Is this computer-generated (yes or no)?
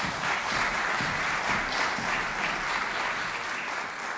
no